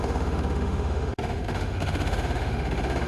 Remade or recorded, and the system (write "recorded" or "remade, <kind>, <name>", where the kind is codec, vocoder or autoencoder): remade, autoencoder, DAC-VAE